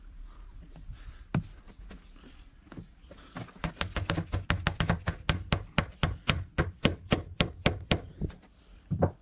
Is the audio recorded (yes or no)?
yes